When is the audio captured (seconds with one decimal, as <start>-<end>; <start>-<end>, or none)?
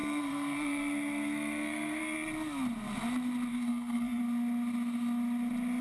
2.0-3.5; 4.2-5.8